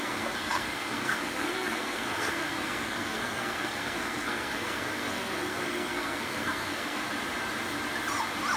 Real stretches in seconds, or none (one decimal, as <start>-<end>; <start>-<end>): 7.0-8.6